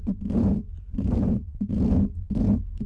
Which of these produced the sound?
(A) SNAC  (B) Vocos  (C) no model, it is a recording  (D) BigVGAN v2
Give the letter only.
D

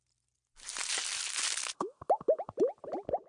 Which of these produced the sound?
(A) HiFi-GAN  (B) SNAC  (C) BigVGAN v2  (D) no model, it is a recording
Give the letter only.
D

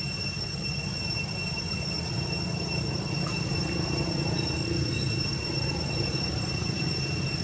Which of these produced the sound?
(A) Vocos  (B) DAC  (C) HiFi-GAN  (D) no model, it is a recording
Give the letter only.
D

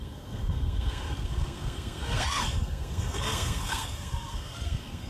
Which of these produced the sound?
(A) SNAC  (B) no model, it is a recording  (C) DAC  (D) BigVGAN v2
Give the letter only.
A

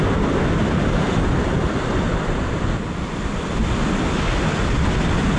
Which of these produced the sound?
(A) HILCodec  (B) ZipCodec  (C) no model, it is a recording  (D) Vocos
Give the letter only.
C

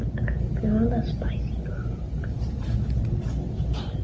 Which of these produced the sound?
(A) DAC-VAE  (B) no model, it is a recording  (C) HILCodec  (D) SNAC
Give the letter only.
B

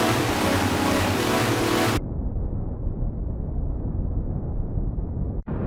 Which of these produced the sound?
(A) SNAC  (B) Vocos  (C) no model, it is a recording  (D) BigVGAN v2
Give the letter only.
D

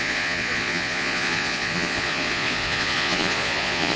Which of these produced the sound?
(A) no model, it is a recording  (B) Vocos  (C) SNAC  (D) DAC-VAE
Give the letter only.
B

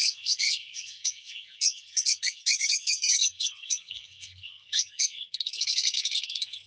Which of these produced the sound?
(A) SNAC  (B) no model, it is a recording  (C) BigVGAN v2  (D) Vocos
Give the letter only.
A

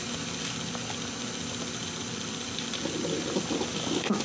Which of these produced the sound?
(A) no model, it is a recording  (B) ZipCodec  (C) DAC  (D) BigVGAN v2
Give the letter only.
A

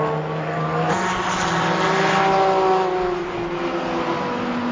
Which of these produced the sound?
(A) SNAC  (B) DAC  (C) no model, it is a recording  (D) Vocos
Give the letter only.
C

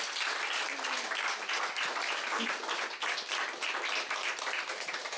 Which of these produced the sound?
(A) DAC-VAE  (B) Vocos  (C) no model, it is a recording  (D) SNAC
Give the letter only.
C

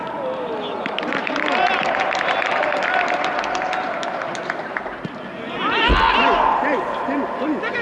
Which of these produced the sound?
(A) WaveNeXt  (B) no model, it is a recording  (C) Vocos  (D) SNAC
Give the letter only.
B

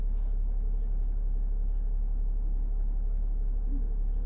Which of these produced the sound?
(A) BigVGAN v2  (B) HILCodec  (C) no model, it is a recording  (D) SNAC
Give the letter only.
C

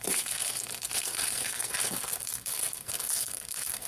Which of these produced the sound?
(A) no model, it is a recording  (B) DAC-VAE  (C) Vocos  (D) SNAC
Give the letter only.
D